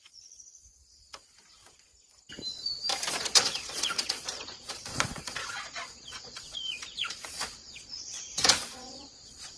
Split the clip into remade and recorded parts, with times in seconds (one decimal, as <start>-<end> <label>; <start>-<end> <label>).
0.0-1.9 remade; 1.9-3.1 recorded; 3.1-9.6 remade